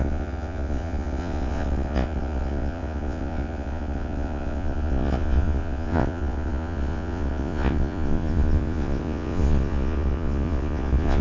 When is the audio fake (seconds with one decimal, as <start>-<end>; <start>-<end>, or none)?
0.0-11.2